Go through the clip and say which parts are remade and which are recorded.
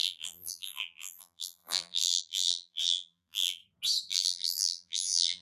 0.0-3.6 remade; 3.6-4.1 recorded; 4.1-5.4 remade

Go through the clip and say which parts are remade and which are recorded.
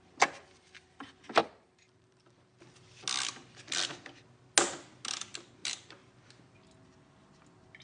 0.0-1.4 recorded; 1.4-2.6 remade; 2.6-5.6 recorded; 5.6-6.1 remade; 6.1-7.8 recorded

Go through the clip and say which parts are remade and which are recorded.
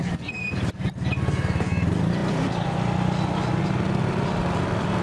0.0-5.0 remade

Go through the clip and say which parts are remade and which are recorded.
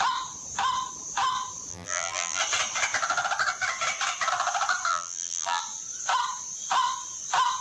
0.0-1.7 recorded; 1.7-2.4 remade; 2.4-4.9 recorded; 4.9-5.6 remade; 5.6-7.6 recorded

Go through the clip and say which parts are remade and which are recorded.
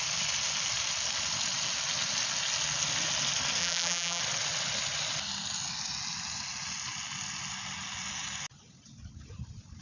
0.0-3.6 recorded; 3.6-4.2 remade; 4.2-9.8 recorded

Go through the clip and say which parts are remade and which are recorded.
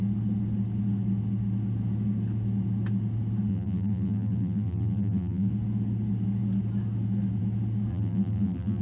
0.0-3.5 recorded; 3.5-5.5 remade; 5.5-7.9 recorded; 7.9-8.8 remade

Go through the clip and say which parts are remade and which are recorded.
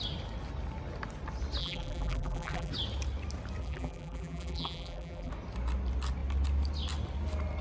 0.0-1.6 recorded; 1.6-2.7 remade; 2.7-3.6 recorded; 3.6-5.3 remade; 5.3-7.6 recorded